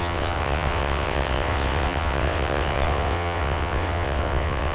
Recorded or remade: remade